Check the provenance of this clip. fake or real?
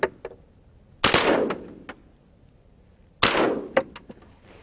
real